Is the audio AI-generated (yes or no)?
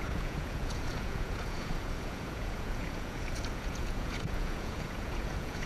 yes